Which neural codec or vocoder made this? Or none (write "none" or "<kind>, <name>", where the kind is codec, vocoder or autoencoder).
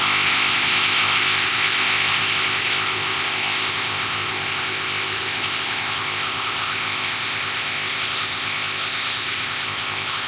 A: codec, ZipCodec